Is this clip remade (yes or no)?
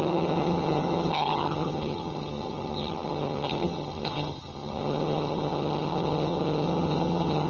yes